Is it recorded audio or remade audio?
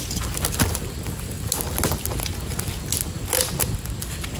recorded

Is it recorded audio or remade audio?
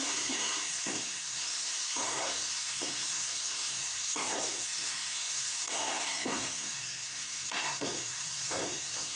remade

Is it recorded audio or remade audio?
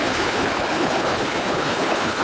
remade